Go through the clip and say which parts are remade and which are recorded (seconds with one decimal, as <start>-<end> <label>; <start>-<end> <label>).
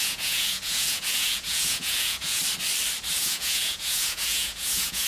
0.0-2.4 remade; 2.4-3.2 recorded; 3.2-5.1 remade